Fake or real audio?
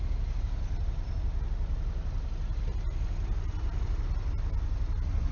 real